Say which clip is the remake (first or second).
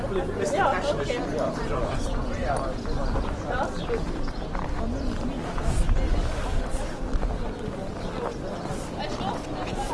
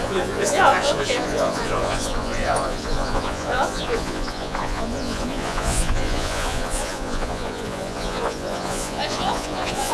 second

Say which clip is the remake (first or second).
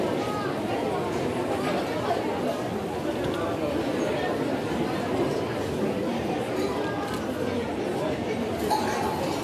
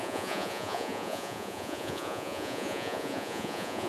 second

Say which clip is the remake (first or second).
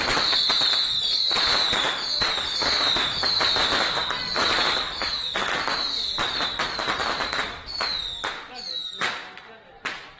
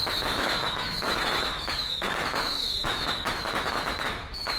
second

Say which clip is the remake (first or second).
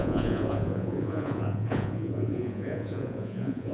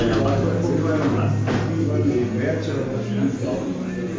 first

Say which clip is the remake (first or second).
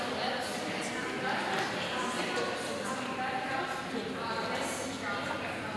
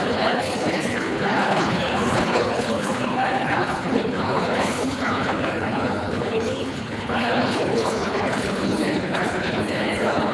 second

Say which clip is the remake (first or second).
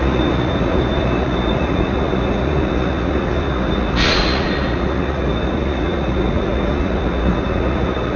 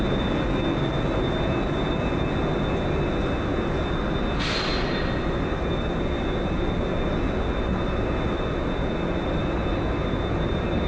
first